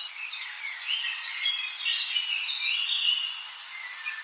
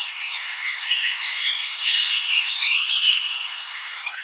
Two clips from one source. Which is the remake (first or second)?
second